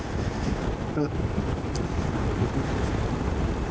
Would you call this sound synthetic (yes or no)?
no